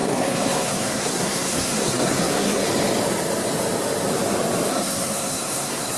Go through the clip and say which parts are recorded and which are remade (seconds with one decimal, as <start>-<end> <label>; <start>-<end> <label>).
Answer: 0.0-2.6 remade; 2.6-4.7 recorded; 4.7-6.0 remade